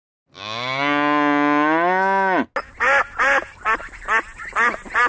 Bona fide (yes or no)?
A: yes